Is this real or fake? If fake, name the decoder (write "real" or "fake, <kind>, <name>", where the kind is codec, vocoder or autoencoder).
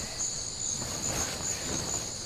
real